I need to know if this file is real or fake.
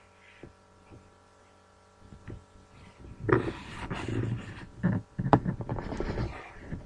real